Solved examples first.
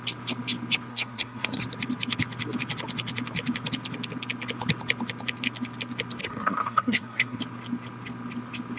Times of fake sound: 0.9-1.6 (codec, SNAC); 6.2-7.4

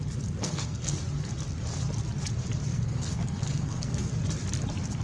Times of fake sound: 0.4-1.0 (codec, SNAC); 2.7-4.1

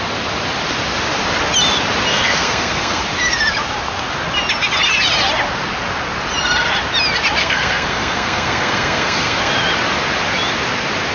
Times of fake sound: 2.1-3.0 (codec, SNAC); 7.4-9.5

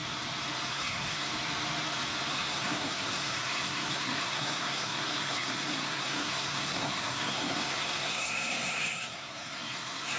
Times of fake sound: 0.7-1.3 (codec, SNAC); 2.3-10.2

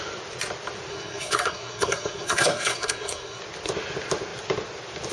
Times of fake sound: 0.9-3.4 (codec, SNAC)

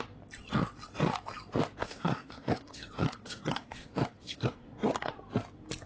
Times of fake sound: 1.8-5.1 (codec, SNAC)

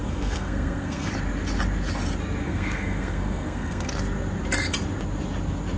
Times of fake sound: 0.0-1.1 (codec, SNAC); 2.4-3.9

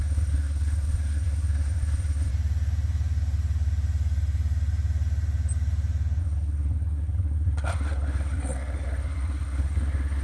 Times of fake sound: 0.0-2.3 (codec, SNAC); 6.2-10.2